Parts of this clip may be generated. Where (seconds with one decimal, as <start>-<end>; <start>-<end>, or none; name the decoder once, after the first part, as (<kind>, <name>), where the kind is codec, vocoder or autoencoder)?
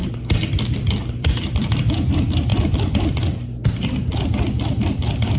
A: 0.0-1.9 (vocoder, BigVGAN v2)